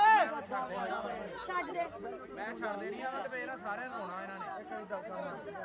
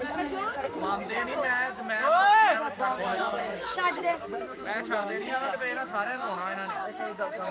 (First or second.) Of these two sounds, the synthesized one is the second